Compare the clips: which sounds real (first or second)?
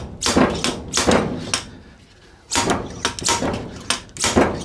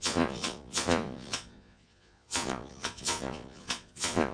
first